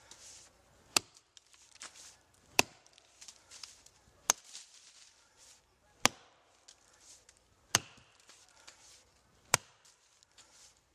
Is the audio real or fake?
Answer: real